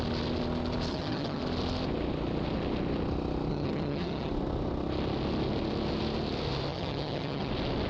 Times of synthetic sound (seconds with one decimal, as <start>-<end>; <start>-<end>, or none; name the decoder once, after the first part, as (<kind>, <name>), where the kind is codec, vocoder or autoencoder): 0.9-1.4 (vocoder, HiFi-GAN); 3.5-4.3; 6.7-7.5